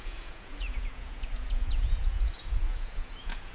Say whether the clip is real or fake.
fake